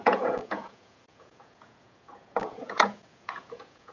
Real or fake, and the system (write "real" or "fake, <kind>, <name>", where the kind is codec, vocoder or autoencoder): fake, vocoder, Vocos